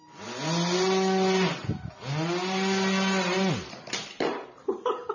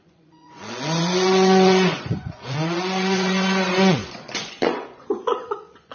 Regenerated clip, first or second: second